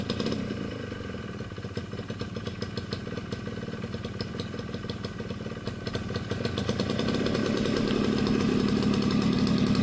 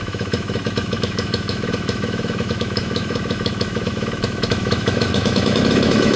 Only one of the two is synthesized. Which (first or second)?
second